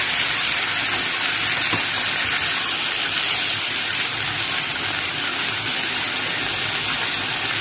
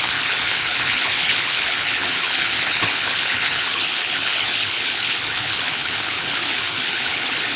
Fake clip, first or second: second